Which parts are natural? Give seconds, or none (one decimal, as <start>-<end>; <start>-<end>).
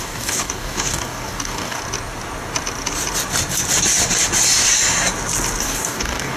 1.8-5.6